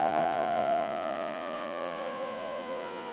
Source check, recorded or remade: remade